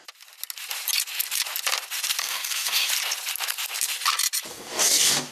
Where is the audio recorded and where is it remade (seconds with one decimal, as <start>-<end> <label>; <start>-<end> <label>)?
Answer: 0.0-2.2 recorded; 2.2-2.9 remade; 2.9-4.5 recorded; 4.5-5.3 remade